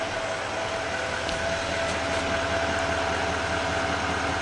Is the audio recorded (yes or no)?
yes